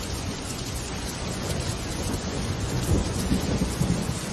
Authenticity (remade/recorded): remade